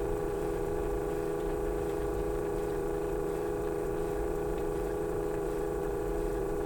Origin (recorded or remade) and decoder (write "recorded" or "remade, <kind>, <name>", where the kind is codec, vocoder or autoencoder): remade, vocoder, BigVGAN v2